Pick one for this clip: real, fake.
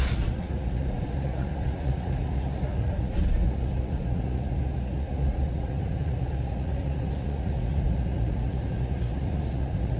fake